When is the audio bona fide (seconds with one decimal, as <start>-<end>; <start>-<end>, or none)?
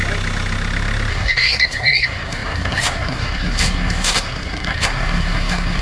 0.0-1.1